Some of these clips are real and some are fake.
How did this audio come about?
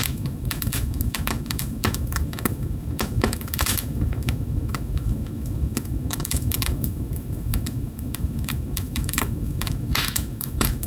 fake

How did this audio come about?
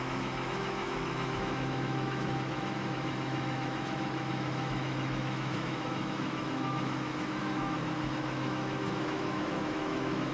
fake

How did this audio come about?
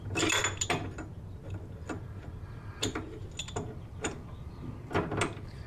real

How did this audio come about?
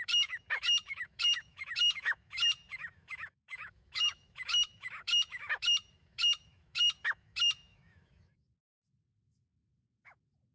fake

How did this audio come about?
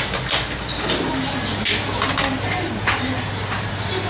real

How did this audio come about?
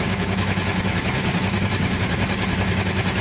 fake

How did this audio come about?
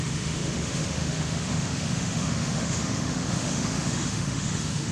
fake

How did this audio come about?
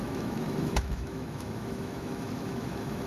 fake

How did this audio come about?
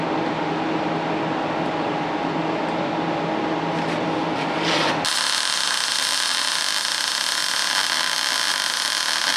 real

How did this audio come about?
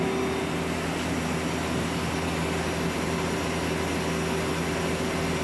real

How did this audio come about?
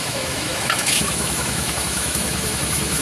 fake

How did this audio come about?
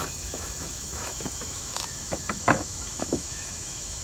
fake